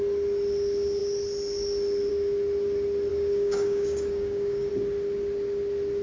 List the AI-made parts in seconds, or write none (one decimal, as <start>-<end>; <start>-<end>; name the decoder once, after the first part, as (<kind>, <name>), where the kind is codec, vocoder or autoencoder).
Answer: 3.1-4.7 (codec, DAC)